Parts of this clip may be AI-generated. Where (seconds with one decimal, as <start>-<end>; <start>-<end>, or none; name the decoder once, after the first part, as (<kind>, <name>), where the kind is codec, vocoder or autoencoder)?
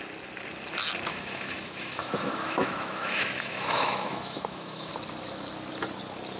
1.1-4.9 (autoencoder, DAC-VAE)